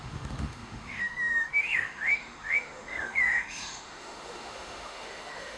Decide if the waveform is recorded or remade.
remade